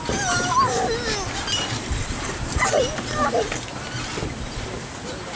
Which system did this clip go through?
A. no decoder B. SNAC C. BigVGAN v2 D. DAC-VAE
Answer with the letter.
A